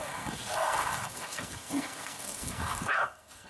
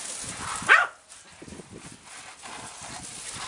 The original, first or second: second